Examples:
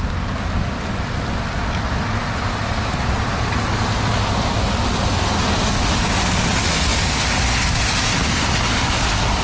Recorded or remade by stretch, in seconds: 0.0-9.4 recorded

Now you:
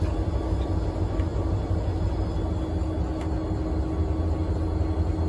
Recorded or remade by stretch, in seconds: 0.0-5.3 recorded